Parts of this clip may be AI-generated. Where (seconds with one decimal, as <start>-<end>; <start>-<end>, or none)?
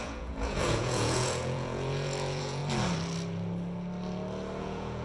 0.0-2.6; 4.6-5.0